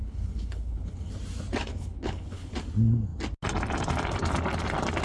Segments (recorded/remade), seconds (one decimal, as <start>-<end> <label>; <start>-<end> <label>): 0.0-1.1 remade; 1.1-1.7 recorded; 1.7-2.5 remade; 2.5-5.0 recorded